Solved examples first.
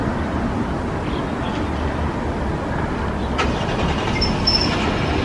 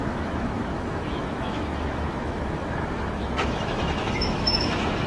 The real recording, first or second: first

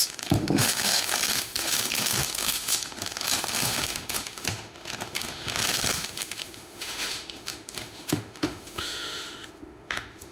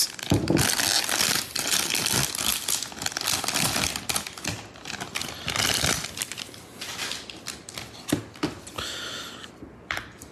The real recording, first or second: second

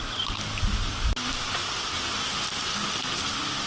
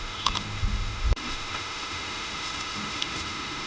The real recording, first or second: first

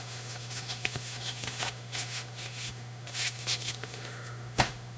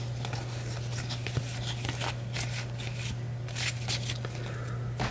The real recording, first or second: second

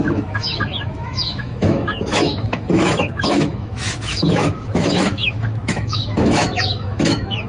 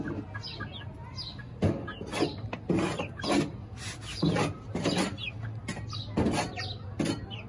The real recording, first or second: second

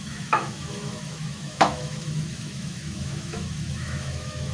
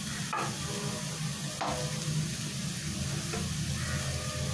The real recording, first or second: second